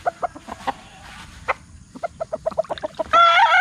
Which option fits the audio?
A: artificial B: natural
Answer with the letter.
B